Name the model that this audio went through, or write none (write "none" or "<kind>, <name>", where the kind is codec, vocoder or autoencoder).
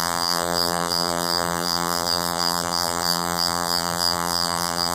vocoder, BigVGAN v2